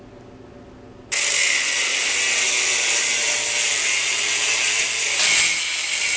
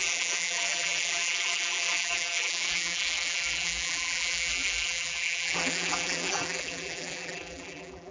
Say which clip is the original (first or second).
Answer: first